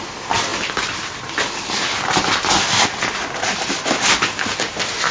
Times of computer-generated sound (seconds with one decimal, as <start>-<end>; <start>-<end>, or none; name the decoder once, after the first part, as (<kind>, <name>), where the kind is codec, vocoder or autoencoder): none